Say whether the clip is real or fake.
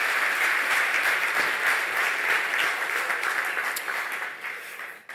real